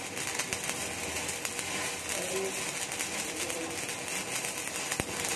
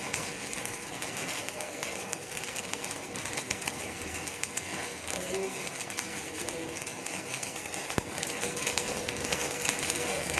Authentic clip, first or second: first